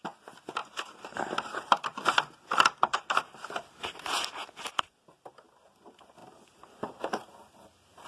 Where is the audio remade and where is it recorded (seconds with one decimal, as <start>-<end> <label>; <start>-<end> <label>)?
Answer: 0.0-0.6 recorded; 0.6-4.6 remade; 4.6-6.2 recorded; 6.2-7.0 remade; 7.0-8.1 recorded